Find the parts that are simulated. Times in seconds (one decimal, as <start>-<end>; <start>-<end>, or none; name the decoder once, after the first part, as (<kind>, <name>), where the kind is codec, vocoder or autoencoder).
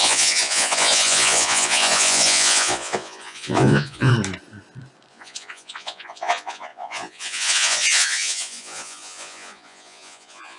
0.0-4.1 (vocoder, Vocos); 5.1-10.6